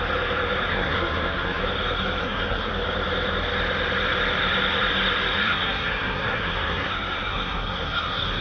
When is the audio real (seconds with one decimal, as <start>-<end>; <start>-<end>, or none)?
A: 0.0-0.7; 1.6-2.2; 2.7-5.4